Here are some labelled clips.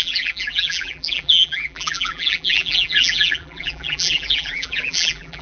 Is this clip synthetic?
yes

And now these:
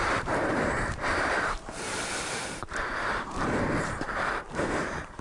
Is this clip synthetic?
yes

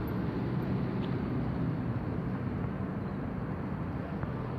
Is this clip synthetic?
no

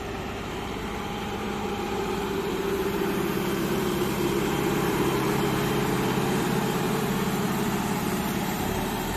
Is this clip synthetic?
yes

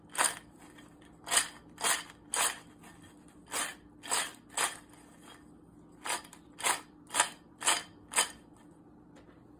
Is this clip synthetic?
no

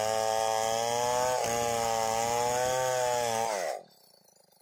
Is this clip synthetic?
no